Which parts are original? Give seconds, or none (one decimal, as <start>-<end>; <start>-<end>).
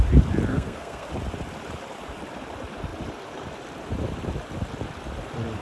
0.0-0.5; 1.1-5.6